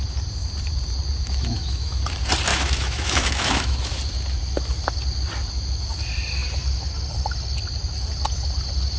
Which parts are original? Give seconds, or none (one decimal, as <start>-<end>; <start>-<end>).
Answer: 0.0-1.2; 2.0-2.5; 4.0-9.0